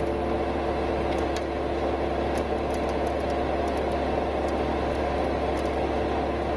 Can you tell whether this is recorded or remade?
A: recorded